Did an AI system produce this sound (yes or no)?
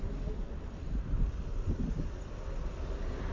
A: no